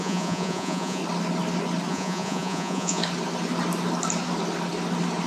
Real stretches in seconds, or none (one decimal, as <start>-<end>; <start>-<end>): 1.0-1.9; 3.0-5.3